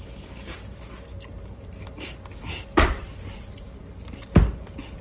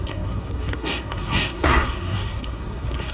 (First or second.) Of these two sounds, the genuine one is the first